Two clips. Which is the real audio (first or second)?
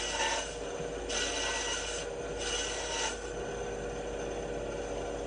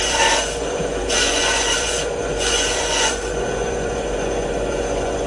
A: first